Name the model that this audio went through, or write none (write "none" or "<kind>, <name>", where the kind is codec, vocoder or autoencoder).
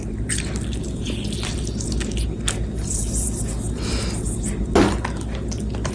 none